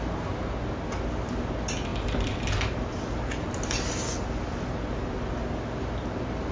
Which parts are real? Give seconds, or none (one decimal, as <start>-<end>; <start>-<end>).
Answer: 0.0-6.5